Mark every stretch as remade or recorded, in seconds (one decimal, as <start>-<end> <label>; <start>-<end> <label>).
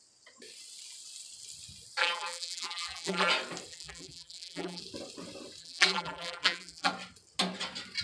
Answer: 0.0-2.0 recorded; 2.0-3.3 remade; 3.3-3.7 recorded; 3.7-4.8 remade; 4.8-5.6 recorded; 5.6-6.9 remade; 6.9-8.0 recorded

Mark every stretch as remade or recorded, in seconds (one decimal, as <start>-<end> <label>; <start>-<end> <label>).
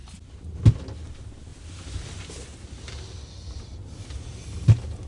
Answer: 0.0-5.1 recorded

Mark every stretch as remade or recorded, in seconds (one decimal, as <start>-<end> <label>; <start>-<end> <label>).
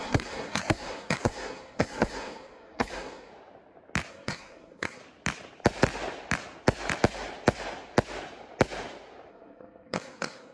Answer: 0.0-3.3 remade; 3.3-4.1 recorded; 4.1-5.0 remade; 5.0-9.3 recorded; 9.3-10.5 remade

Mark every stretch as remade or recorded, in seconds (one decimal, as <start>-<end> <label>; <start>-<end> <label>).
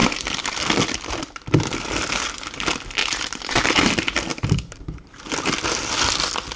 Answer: 0.0-3.0 recorded; 3.0-3.6 remade; 3.6-4.3 recorded; 4.3-5.2 remade; 5.2-6.6 recorded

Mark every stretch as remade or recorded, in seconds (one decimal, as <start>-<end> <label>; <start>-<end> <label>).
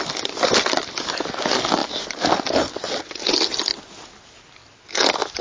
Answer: 0.0-5.4 recorded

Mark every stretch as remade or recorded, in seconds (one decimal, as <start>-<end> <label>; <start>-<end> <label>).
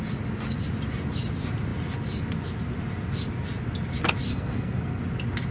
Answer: 0.0-4.3 recorded; 4.3-5.0 remade; 5.0-5.5 recorded